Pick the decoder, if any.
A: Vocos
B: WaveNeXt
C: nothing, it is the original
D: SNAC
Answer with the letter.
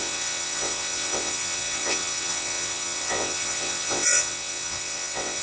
B